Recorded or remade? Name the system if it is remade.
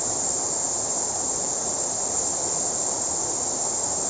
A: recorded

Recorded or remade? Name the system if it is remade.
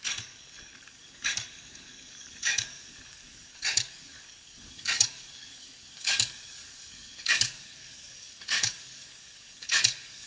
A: remade, codec, DAC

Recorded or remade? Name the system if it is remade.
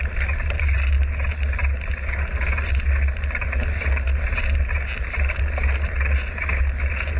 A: recorded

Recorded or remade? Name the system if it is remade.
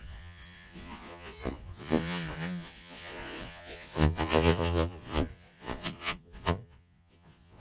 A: remade, vocoder, Vocos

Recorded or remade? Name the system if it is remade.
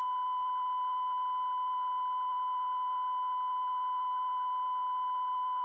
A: recorded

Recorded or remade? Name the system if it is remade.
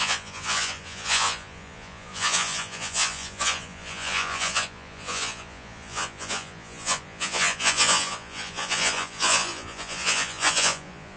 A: remade, vocoder, Vocos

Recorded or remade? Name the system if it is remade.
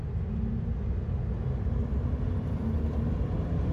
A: recorded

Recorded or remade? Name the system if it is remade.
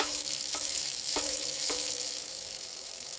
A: remade, autoencoder, DAC-VAE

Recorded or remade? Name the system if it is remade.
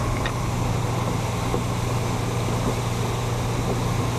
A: recorded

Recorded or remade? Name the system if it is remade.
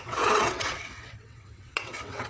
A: remade, vocoder, WaveNeXt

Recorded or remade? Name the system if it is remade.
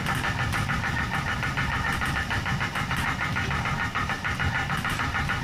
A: recorded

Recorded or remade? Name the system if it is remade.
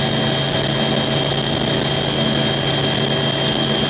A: recorded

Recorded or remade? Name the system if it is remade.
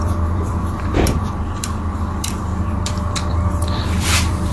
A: remade, vocoder, BigVGAN v2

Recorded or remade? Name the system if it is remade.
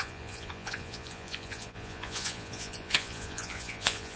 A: remade, vocoder, Vocos